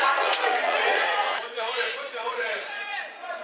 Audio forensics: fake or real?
fake